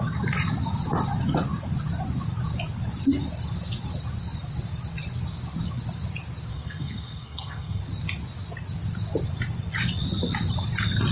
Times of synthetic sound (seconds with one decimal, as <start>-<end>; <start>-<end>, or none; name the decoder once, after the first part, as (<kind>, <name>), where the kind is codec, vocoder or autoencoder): 6.5-7.8 (codec, SNAC)